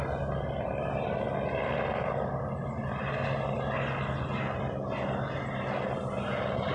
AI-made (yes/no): no